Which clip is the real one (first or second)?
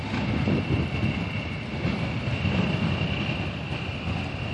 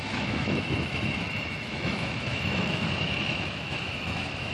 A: first